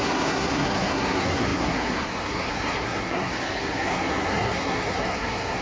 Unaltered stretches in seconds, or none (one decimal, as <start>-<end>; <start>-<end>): none